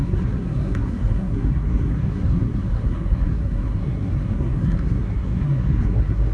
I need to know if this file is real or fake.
fake